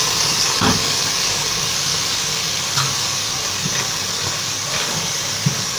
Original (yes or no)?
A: no